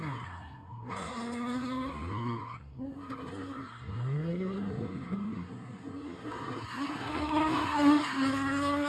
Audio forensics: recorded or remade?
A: remade